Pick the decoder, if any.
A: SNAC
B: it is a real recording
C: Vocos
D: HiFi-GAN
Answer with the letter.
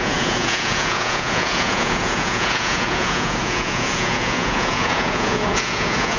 C